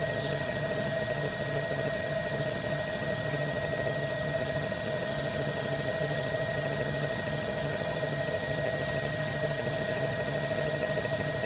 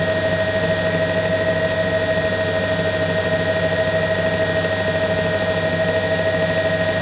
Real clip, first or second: second